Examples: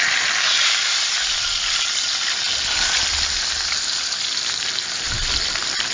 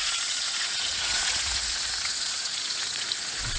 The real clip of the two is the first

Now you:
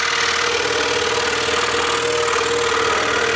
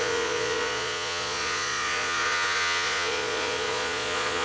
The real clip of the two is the first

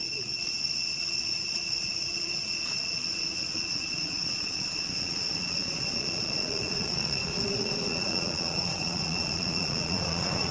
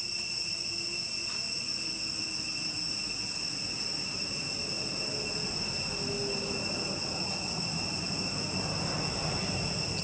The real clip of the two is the second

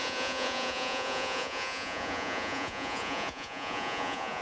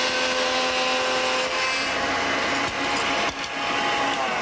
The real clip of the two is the second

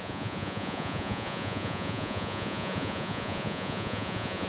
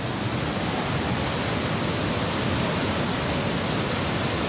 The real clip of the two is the second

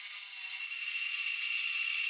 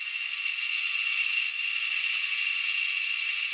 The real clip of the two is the first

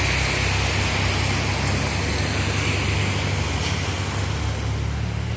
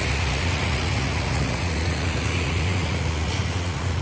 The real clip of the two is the first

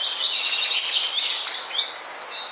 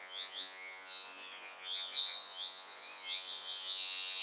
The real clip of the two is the first